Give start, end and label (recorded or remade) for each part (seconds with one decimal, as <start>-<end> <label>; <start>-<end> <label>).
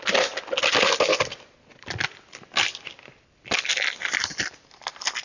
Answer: 0.0-5.2 recorded